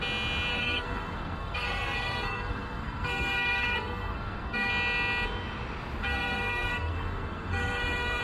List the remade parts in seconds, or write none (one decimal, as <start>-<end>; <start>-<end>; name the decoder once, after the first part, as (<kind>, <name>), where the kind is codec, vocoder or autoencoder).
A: 0.5-4.7 (codec, SNAC); 6.0-8.2